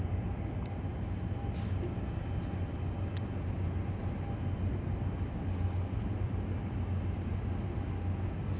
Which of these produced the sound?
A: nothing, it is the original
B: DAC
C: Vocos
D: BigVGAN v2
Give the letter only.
A